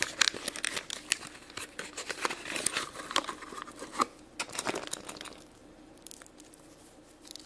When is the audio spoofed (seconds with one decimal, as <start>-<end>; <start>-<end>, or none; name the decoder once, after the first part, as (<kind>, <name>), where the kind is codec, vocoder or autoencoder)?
5.6-6.1 (vocoder, BigVGAN v2)